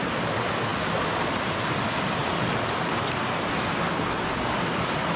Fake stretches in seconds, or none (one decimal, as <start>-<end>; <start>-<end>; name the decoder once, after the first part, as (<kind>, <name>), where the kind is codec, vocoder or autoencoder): none